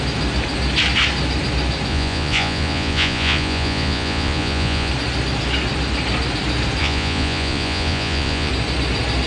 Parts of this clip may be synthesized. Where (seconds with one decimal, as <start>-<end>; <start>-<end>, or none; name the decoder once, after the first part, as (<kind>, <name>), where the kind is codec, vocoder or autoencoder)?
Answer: 1.9-4.9 (vocoder, Vocos); 6.8-8.5